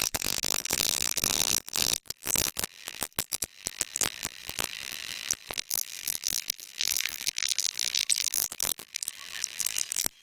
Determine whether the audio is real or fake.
fake